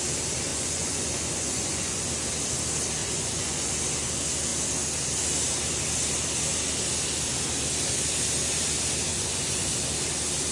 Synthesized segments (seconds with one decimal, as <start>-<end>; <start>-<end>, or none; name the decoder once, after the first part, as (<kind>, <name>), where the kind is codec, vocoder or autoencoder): 0.5-2.1 (vocoder, Vocos); 3.0-3.7; 9.1-9.7